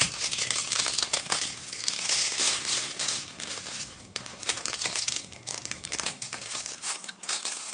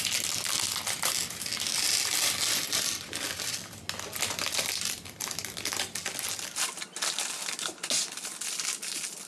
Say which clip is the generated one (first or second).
first